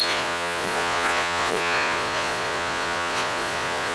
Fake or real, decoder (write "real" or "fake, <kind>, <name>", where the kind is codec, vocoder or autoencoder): fake, vocoder, Vocos